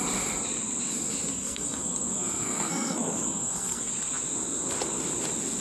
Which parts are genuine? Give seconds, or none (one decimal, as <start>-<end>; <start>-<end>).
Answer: 0.0-1.3; 3.9-5.6

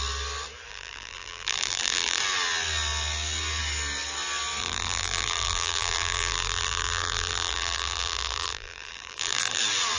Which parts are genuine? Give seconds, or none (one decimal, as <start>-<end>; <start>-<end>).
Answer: 0.0-0.7; 2.2-4.6; 9.6-10.0

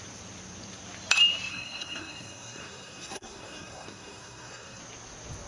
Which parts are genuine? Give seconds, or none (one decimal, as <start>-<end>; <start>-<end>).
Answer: 0.0-1.5; 4.8-5.5

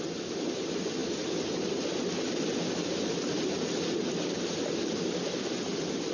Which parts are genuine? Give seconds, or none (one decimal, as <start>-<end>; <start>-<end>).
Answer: 0.0-6.1

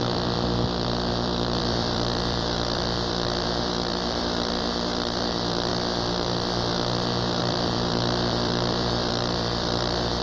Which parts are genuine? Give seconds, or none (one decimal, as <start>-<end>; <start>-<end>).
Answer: 5.7-7.4

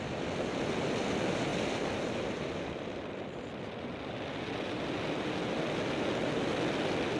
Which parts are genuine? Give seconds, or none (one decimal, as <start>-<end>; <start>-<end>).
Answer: 0.0-7.2

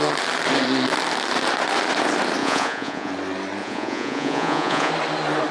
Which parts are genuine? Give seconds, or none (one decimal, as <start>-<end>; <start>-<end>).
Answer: 0.0-2.4; 3.1-3.6; 4.9-5.5